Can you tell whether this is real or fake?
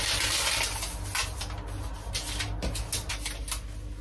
real